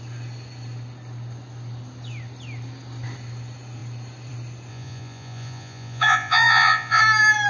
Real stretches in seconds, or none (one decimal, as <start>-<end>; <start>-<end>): 0.0-4.7; 7.0-7.5